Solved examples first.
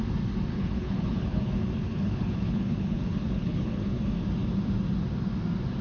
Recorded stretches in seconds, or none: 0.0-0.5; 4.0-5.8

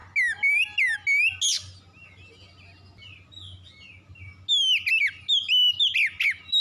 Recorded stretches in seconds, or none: 0.0-6.6

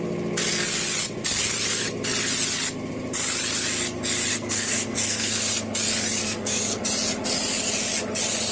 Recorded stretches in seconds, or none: 0.0-4.3; 5.5-6.2; 6.8-8.5

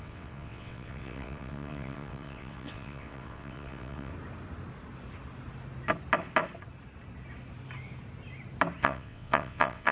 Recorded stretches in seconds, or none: 4.1-8.8

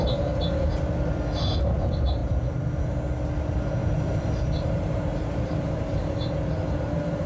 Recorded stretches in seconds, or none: 0.0-2.2; 2.8-3.8

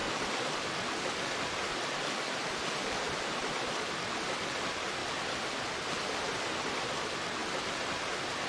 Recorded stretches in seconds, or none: 0.6-1.7; 3.8-8.5

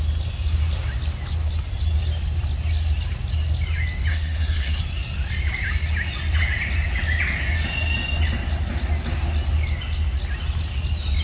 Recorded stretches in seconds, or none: 0.0-4.1; 4.8-11.2